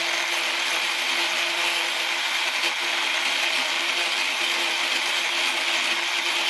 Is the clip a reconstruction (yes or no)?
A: no